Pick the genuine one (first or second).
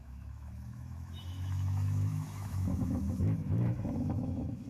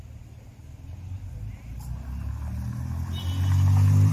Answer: second